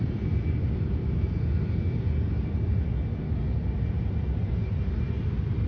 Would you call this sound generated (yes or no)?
no